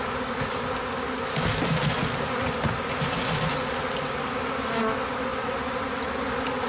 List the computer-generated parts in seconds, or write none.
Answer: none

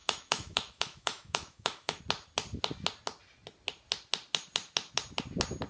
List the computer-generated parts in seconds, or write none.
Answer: 0.0-2.0 (autoencoder, DAC-VAE)

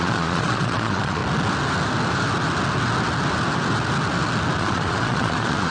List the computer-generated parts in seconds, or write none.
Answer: 0.0-1.2 (vocoder, Vocos); 4.6-5.7

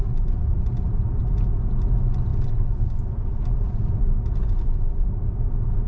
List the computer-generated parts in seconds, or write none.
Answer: none

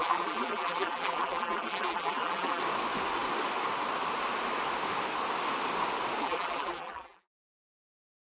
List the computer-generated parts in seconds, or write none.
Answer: 0.0-2.6 (vocoder, BigVGAN v2); 6.2-8.3

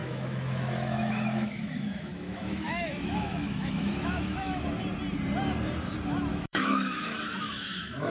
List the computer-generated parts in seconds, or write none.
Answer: 0.0-4.6 (autoencoder, DAC-VAE); 6.3-8.1

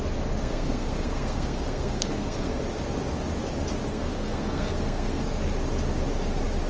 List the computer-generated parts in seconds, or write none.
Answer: 0.4-2.6 (codec, SNAC); 3.9-5.2

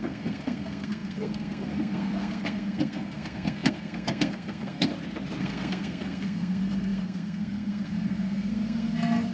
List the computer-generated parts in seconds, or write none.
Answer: 0.0-4.9 (codec, SNAC); 5.4-9.3